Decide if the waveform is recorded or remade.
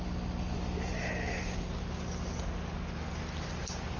recorded